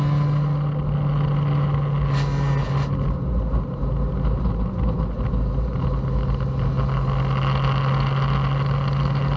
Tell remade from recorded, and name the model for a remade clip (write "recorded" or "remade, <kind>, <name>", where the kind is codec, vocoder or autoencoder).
recorded